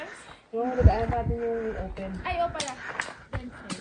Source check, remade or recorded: recorded